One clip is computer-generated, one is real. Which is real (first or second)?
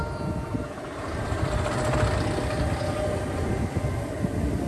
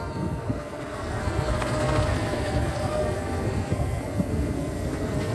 first